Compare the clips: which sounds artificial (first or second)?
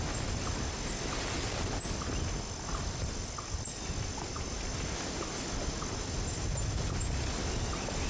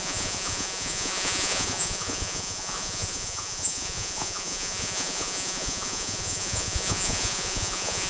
second